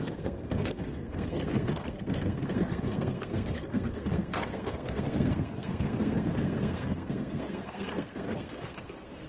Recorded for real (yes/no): no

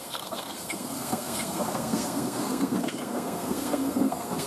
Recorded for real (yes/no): no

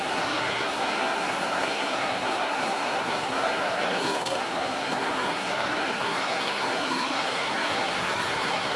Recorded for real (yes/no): no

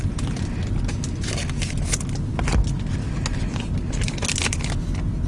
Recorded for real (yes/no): yes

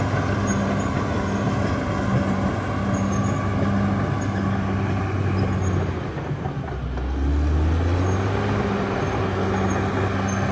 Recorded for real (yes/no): yes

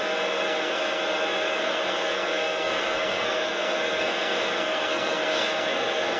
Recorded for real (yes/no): no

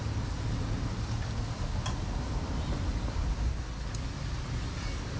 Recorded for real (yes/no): yes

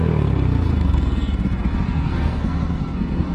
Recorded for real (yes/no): no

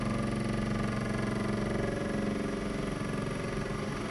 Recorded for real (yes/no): yes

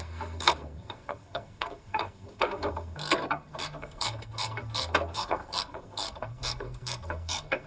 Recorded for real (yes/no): no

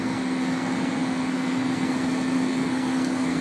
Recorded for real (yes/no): no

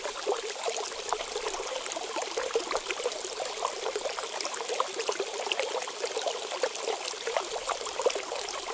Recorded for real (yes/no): yes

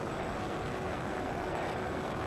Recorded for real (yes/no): no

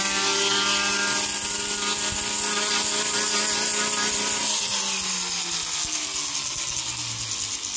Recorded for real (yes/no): yes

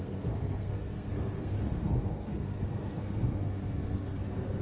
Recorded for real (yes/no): no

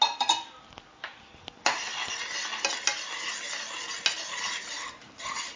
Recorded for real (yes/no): yes